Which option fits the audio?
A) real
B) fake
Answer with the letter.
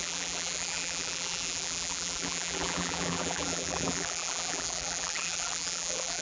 B